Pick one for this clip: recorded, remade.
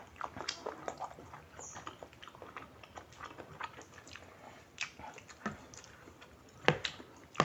recorded